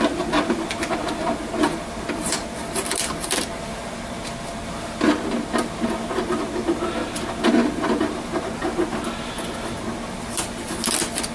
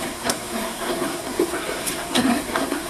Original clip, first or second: first